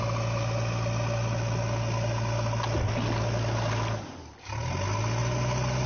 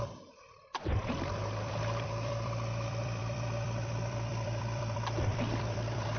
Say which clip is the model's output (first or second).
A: second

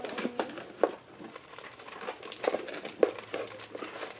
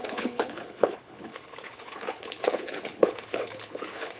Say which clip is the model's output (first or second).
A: second